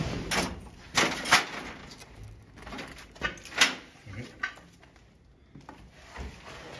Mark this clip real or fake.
real